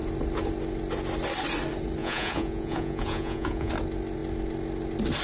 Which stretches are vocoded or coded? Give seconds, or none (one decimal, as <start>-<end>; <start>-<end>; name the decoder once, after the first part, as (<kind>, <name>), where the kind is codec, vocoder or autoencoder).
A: 2.0-3.7 (vocoder, Vocos)